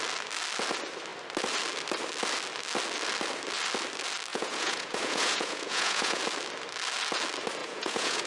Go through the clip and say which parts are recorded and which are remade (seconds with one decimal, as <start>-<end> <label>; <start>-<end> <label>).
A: 0.0-4.3 recorded; 4.3-6.2 remade; 6.2-7.6 recorded; 7.6-8.3 remade